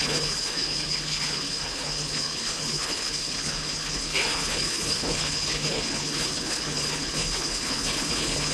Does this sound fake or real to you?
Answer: fake